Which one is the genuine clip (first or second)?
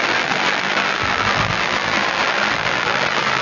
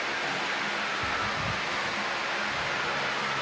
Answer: second